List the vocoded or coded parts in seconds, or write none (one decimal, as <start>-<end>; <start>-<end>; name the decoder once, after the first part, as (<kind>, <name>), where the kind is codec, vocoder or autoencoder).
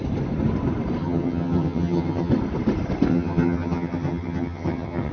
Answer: 1.0-2.3 (vocoder, HiFi-GAN); 3.1-5.1